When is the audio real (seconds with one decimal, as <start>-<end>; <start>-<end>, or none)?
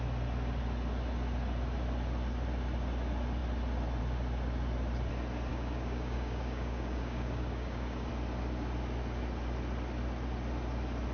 0.0-5.5; 8.1-11.1